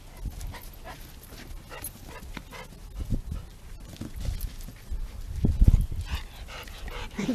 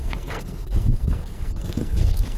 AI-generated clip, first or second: second